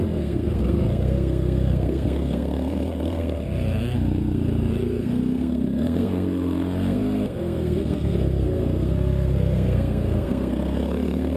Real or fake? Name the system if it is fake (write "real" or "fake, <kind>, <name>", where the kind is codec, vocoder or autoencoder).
fake, codec, SNAC